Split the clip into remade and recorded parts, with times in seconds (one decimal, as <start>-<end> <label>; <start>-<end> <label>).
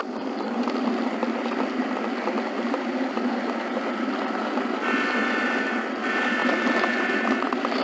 0.0-7.8 recorded